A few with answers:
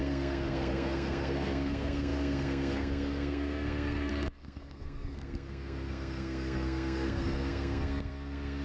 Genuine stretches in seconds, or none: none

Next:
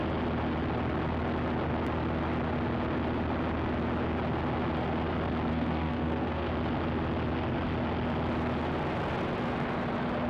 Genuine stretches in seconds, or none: 0.0-5.5; 6.5-10.3